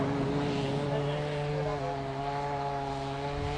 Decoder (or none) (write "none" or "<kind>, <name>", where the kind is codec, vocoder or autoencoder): none